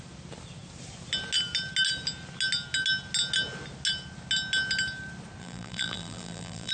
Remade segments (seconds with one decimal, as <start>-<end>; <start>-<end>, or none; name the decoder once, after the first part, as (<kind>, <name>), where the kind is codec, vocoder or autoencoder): 5.4-6.7 (vocoder, BigVGAN v2)